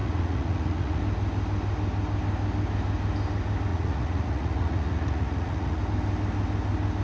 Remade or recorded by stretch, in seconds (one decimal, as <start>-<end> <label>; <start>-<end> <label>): 0.0-1.0 remade; 1.0-3.7 recorded; 3.7-5.8 remade; 5.8-7.0 recorded